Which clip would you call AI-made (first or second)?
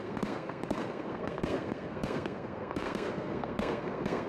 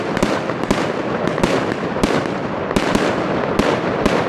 first